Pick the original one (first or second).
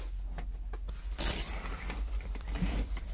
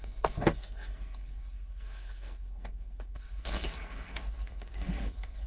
first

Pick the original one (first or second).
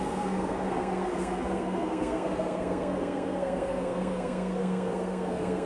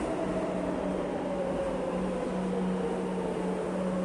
second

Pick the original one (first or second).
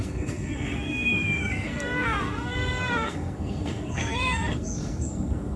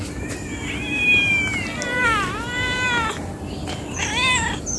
second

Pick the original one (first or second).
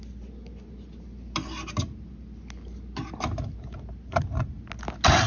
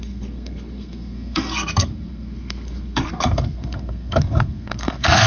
first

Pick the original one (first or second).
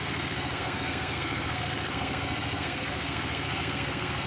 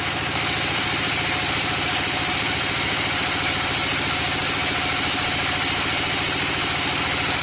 second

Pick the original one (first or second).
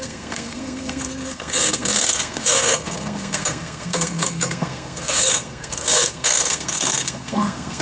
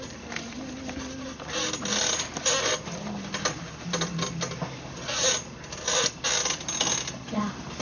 second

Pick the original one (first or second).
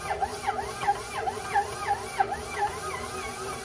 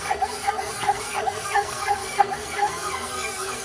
first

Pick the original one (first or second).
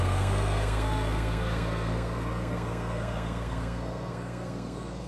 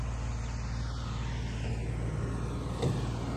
second